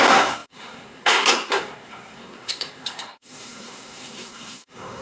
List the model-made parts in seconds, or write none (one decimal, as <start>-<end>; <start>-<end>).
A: 0.0-5.0

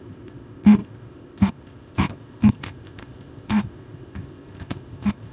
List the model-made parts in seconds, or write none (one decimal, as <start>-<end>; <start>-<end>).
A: 0.0-5.3

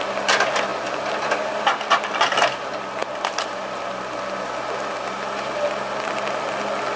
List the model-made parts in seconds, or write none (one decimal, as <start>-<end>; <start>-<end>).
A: none

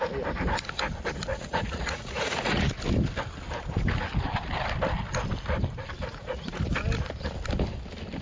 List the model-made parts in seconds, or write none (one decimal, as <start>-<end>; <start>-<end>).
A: 1.3-2.8; 6.1-6.6

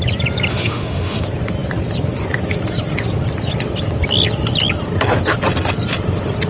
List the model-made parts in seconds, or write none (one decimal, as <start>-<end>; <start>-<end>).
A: 0.5-1.2

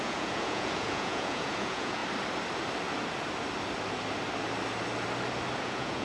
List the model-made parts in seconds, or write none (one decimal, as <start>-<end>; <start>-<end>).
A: 0.0-2.0; 5.6-6.0

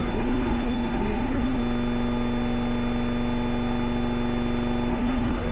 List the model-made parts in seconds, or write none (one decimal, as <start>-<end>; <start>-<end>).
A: 0.0-1.6; 4.9-5.5

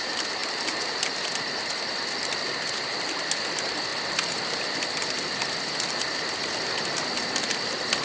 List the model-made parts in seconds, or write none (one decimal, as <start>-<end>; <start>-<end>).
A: none